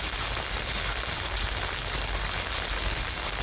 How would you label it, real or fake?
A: real